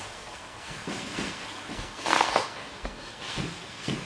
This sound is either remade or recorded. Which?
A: remade